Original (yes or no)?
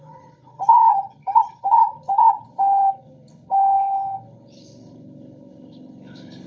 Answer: no